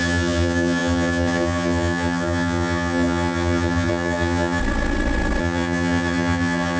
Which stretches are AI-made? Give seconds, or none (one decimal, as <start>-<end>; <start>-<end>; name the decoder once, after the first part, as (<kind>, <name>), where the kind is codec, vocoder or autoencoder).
0.0-4.6 (vocoder, HiFi-GAN); 5.4-6.8